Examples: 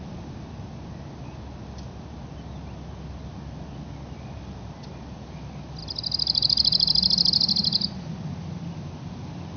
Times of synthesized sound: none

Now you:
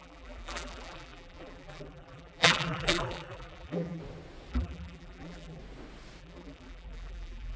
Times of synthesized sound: 0.0-4.0 (vocoder, BigVGAN v2); 4.5-5.6; 6.2-7.6

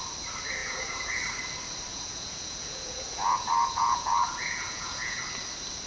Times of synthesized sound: 0.6-1.2 (vocoder, Vocos); 1.9-5.2

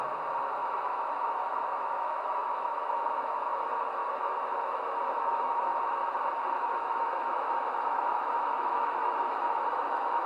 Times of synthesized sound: 0.6-3.6 (autoencoder, DAC-VAE); 4.0-6.0; 6.8-10.3

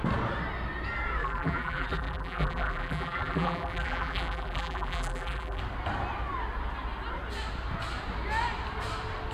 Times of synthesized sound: 1.2-5.6 (vocoder, BigVGAN v2)